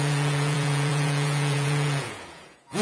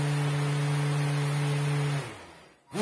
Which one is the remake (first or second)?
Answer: first